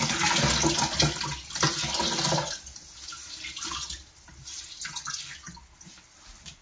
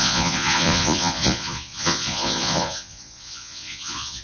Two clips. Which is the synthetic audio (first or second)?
second